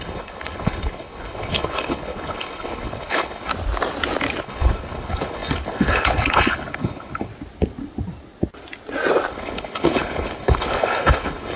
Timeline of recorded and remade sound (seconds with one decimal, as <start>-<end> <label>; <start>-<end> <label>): 0.0-3.5 remade; 3.5-4.4 recorded; 4.4-7.3 remade; 7.3-9.3 recorded; 9.3-11.6 remade